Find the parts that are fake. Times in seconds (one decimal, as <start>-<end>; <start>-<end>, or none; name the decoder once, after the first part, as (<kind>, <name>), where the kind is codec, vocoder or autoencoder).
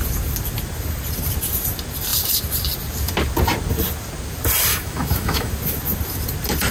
4.7-5.5 (autoencoder, DAC-VAE)